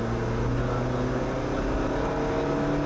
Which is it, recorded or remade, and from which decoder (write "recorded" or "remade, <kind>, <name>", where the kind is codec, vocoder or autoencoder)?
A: recorded